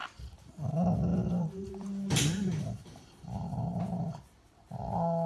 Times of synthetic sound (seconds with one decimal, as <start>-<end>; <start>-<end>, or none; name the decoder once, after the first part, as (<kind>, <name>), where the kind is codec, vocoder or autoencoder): 1.1-3.8 (vocoder, BigVGAN v2)